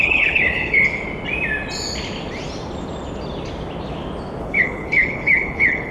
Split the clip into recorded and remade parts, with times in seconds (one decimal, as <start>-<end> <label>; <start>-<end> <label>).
0.0-0.9 remade; 0.9-4.4 recorded; 4.4-5.9 remade